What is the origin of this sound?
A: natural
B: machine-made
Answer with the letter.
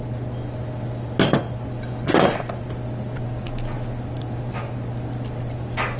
A